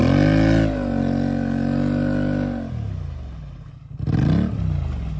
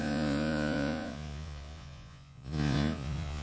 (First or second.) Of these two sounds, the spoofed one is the second